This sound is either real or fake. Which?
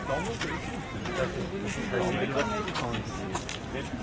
fake